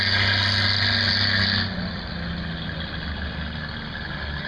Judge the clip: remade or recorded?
recorded